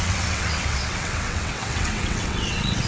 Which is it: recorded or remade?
remade